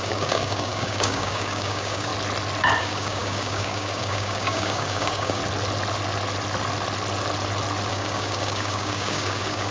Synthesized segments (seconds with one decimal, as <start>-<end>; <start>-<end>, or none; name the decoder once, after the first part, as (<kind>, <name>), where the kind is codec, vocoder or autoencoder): 0.0-2.1 (codec, DAC); 2.8-5.4; 7.9-9.7